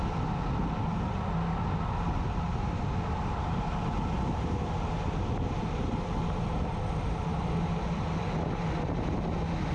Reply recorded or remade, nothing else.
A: recorded